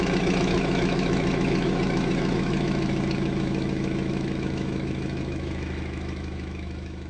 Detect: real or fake fake